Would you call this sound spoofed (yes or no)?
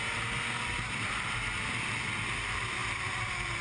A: no